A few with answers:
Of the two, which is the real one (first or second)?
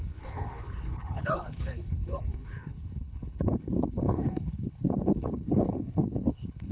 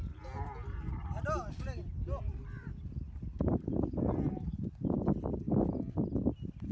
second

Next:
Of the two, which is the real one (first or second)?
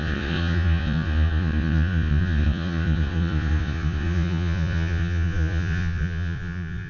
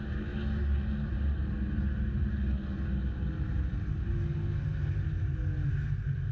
second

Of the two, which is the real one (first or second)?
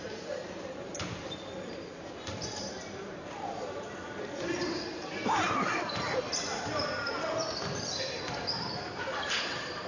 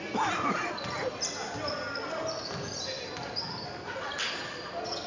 second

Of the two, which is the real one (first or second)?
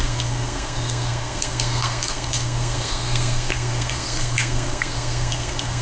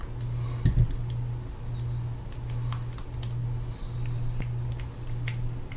second